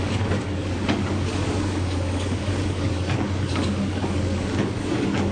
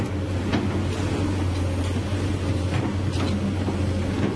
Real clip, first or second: second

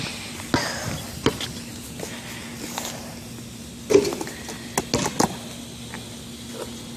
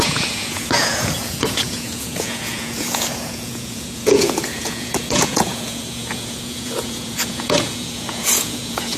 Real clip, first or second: first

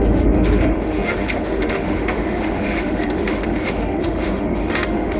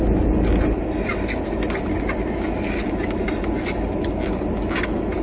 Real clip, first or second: second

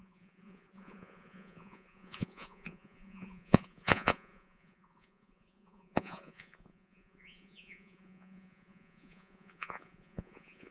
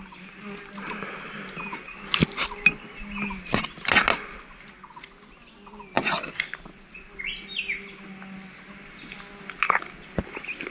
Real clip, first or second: second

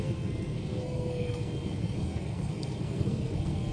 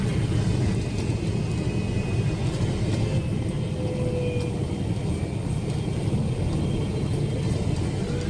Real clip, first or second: second